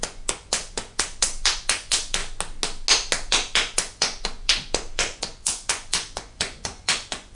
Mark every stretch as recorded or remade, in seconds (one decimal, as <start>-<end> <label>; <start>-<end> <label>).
0.0-2.2 remade; 2.2-3.3 recorded; 3.3-7.3 remade